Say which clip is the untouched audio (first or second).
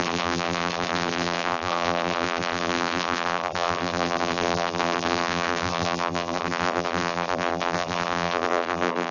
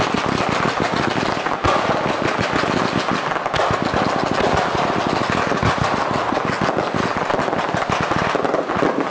second